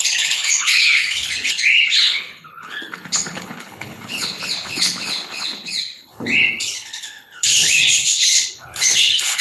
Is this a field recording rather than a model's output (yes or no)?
no